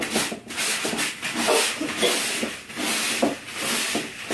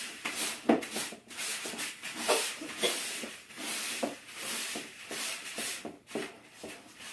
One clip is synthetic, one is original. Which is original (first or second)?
first